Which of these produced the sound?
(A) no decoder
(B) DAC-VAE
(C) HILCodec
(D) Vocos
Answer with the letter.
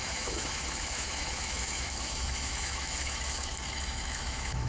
B